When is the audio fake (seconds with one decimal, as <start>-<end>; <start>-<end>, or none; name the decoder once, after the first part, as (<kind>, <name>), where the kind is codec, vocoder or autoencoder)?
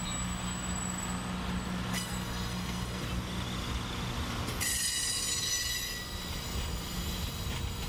1.9-3.0 (codec, SNAC)